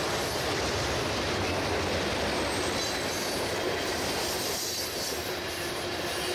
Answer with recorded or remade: recorded